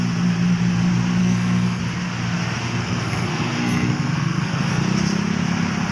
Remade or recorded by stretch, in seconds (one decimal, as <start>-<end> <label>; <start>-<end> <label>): 0.0-1.2 recorded; 1.2-1.8 remade; 1.8-2.8 recorded; 2.8-4.8 remade; 4.8-5.9 recorded